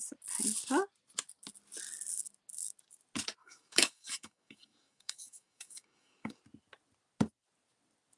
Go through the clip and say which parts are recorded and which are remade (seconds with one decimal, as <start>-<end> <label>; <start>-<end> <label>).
0.0-3.4 recorded; 3.4-6.4 remade; 6.4-8.2 recorded